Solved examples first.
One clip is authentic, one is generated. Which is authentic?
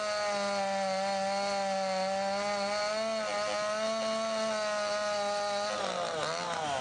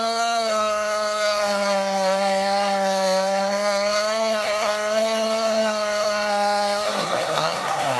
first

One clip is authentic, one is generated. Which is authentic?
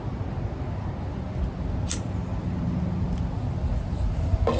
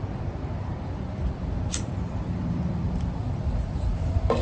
first